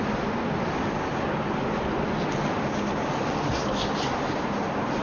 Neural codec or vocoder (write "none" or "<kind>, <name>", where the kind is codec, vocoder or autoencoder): none